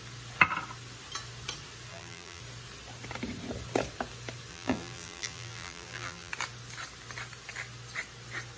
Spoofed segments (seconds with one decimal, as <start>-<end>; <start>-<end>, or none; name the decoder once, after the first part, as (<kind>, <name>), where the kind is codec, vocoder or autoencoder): 1.9-2.4 (vocoder, BigVGAN v2); 4.5-6.3